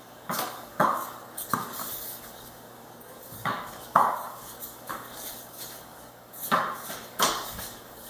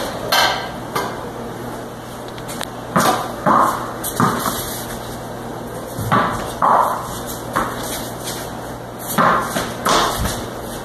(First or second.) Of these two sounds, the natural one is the second